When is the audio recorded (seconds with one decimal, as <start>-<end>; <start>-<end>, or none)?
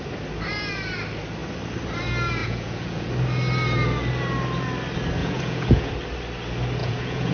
0.0-2.4; 3.1-5.2; 5.9-6.8